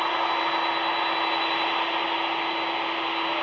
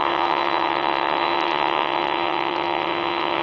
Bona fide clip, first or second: first